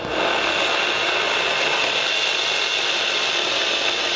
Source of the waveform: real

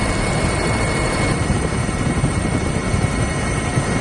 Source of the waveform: fake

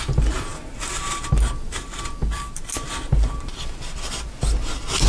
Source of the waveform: real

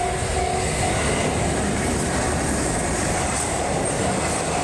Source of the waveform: real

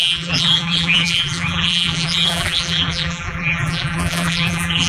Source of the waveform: fake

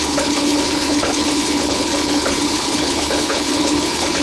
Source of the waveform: fake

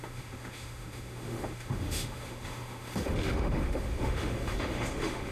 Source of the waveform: fake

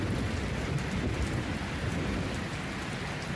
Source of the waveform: real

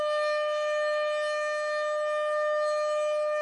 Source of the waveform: real